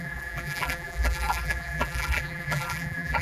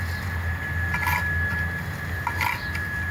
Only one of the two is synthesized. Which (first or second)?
first